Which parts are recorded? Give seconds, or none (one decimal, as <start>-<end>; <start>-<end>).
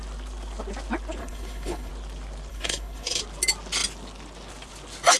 0.0-1.2; 1.9-2.5; 3.2-5.2